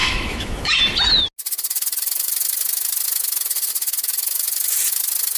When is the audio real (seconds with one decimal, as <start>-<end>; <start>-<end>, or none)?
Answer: 0.8-5.4